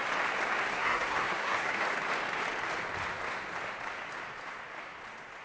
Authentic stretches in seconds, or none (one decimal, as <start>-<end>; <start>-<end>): 0.0-0.7; 1.8-5.4